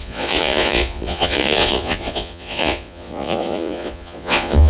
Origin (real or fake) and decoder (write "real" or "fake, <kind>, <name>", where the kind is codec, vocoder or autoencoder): fake, vocoder, Vocos